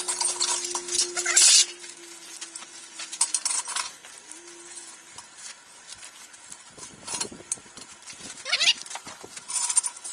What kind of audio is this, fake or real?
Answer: real